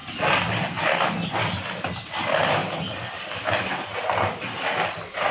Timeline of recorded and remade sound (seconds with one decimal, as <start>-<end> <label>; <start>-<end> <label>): 0.0-5.3 recorded